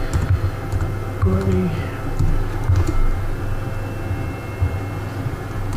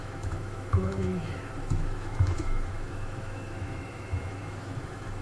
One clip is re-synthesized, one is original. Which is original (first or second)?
first